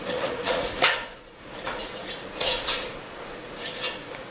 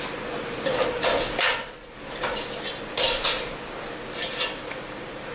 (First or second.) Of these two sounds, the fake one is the first